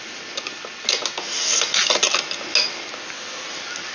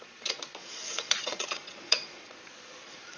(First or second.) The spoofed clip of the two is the second